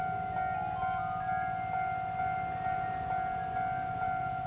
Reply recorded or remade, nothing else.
recorded